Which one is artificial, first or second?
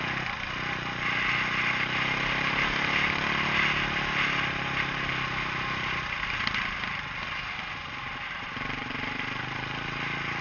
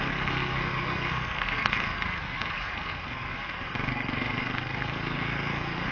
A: second